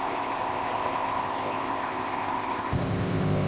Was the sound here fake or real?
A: fake